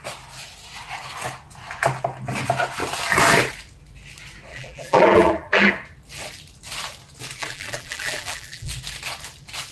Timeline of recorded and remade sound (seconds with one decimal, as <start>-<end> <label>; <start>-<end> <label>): 0.0-4.5 recorded; 4.5-5.7 remade; 5.7-7.4 recorded; 7.4-8.7 remade; 8.7-9.7 recorded